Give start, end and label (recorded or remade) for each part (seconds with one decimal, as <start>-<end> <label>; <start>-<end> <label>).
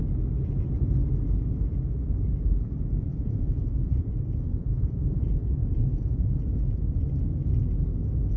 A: 0.0-3.1 recorded; 3.1-4.1 remade; 4.1-4.6 recorded; 4.6-6.4 remade; 6.4-8.4 recorded